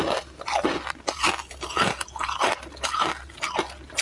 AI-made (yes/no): no